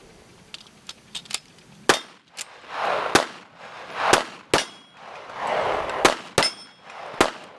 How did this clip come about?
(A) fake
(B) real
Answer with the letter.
B